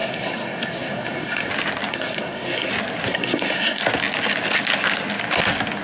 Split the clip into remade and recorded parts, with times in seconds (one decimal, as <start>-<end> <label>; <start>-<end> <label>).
0.0-1.5 remade; 1.5-1.9 recorded; 1.9-2.7 remade; 2.7-3.1 recorded; 3.1-3.8 remade; 3.8-5.8 recorded